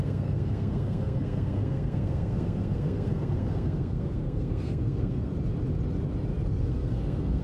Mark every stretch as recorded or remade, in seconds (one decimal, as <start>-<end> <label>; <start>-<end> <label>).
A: 0.0-5.3 remade; 5.3-6.6 recorded; 6.6-7.4 remade